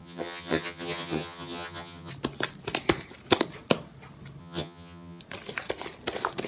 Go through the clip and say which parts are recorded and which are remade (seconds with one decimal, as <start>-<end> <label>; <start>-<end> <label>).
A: 0.0-2.1 remade; 2.1-4.4 recorded; 4.4-5.2 remade; 5.2-6.5 recorded